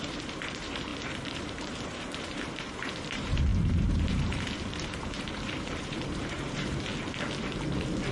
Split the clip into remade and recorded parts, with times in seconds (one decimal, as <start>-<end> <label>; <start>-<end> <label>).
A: 0.0-6.9 remade; 6.9-8.1 recorded